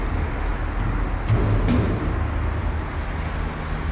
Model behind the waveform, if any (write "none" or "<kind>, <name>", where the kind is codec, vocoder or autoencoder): none